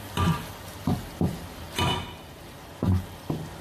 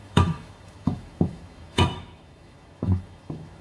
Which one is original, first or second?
first